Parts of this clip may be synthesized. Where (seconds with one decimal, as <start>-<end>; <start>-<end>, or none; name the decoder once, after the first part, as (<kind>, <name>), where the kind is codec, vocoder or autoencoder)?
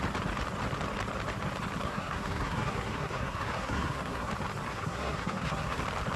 1.8-4.3 (codec, SNAC); 4.7-5.8